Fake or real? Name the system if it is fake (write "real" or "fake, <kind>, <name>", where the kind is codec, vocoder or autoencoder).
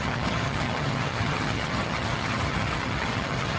fake, vocoder, HiFi-GAN